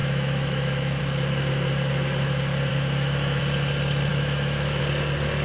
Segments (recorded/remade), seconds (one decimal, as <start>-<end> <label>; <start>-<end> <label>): 0.0-1.0 remade; 1.0-2.7 recorded; 2.7-3.4 remade; 3.4-4.1 recorded; 4.1-4.8 remade; 4.8-5.4 recorded